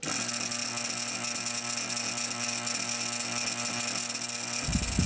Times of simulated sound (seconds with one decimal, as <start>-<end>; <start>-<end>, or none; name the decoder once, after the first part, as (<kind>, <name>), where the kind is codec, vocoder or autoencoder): none